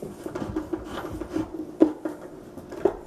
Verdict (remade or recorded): recorded